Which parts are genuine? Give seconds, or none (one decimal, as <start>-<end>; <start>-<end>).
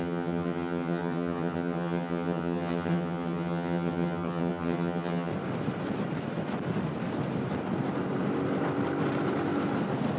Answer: 5.3-10.2